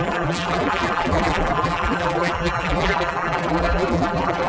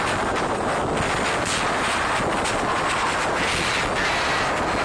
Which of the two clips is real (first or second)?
second